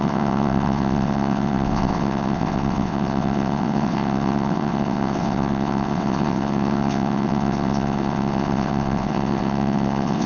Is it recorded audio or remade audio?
remade